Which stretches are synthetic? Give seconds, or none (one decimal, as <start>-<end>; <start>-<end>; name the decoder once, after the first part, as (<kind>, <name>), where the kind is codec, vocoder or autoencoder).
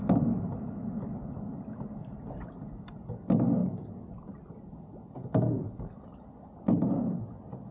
none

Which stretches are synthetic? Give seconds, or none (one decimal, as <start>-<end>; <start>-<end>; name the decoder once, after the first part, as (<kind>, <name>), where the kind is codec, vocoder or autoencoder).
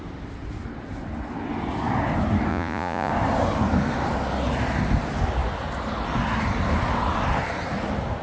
2.5-3.1 (vocoder, Vocos)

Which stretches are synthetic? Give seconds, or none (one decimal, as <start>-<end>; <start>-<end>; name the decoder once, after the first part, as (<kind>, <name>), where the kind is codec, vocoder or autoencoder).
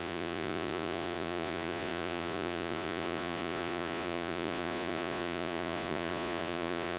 0.0-7.0 (vocoder, Vocos)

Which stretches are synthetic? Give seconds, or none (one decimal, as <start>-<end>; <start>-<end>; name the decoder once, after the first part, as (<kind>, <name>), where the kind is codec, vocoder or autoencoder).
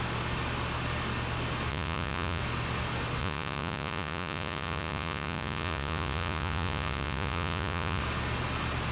1.7-2.4 (vocoder, Vocos); 3.2-8.0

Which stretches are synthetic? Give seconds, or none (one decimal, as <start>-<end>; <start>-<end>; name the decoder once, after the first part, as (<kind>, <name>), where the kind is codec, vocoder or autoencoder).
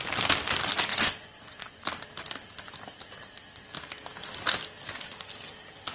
0.9-1.9 (vocoder, Vocos)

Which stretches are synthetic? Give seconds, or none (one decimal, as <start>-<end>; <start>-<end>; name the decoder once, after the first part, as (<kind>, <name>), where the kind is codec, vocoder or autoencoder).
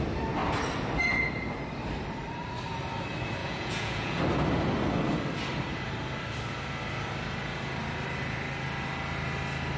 3.4-4.2 (vocoder, Vocos)